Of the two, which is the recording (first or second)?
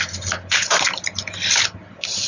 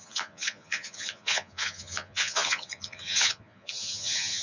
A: first